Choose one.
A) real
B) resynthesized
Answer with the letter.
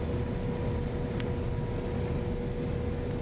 A